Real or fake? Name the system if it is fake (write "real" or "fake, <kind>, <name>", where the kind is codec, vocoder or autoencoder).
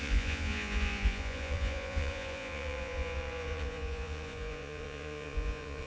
fake, vocoder, Vocos